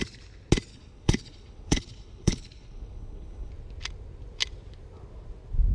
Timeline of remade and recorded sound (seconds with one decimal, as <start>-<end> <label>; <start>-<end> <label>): 0.0-0.7 recorded; 0.7-3.5 remade; 3.5-5.7 recorded